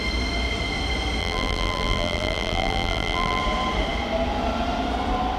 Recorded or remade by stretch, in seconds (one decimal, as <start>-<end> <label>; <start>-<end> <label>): 0.0-1.2 recorded; 1.2-3.4 remade; 3.4-5.4 recorded

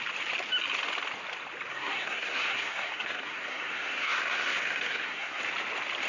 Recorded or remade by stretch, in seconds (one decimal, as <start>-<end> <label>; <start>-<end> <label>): 0.0-1.7 recorded; 1.7-5.4 remade; 5.4-6.1 recorded

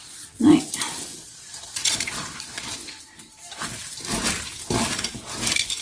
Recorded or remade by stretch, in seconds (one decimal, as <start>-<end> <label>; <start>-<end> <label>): 0.0-1.3 recorded; 1.3-2.8 remade; 2.8-5.8 recorded

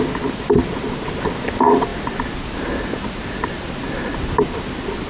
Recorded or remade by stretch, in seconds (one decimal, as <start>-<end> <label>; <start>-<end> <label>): 0.0-1.9 recorded; 1.9-5.1 remade